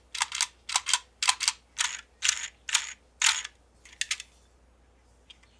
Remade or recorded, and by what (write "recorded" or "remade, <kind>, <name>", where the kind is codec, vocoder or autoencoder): recorded